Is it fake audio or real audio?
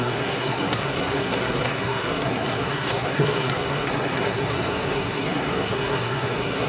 fake